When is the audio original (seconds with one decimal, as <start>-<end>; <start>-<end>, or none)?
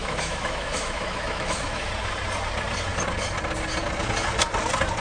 1.9-5.0